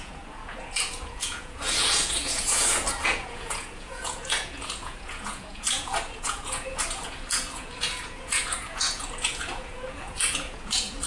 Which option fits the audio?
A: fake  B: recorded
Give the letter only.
A